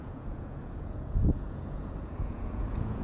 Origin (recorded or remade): remade